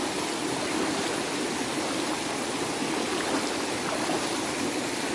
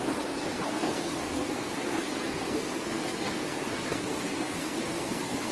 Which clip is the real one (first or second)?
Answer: first